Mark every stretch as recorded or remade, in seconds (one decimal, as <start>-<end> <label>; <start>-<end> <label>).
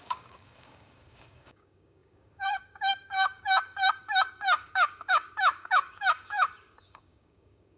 0.0-7.8 remade